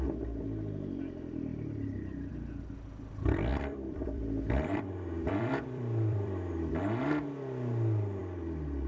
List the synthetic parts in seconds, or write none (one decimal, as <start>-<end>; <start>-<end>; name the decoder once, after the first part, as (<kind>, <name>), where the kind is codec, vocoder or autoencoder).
3.5-6.7 (vocoder, BigVGAN v2); 8.2-8.9